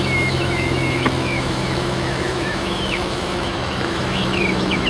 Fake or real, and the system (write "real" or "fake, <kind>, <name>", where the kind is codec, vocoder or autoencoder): fake, autoencoder, DAC-VAE